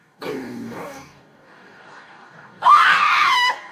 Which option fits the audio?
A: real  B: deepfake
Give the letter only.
B